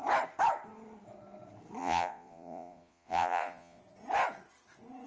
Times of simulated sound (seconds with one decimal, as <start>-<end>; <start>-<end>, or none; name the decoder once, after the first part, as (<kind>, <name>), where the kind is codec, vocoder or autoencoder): 1.8-3.8 (vocoder, Vocos)